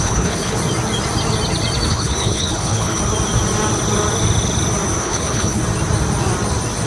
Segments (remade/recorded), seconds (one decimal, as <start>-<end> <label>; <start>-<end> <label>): 0.0-0.6 remade; 0.6-1.9 recorded; 1.9-3.0 remade; 3.0-5.0 recorded; 5.0-5.6 remade; 5.6-6.9 recorded